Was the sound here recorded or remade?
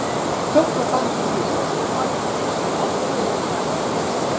recorded